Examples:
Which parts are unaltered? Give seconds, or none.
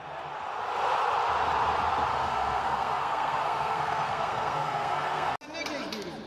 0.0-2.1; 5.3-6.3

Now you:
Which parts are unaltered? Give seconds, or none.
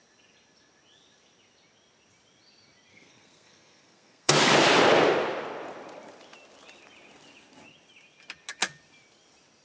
0.0-2.9; 4.3-9.6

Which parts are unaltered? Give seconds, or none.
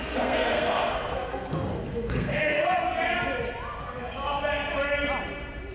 2.9-3.8; 4.4-5.7